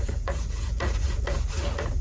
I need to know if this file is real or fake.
fake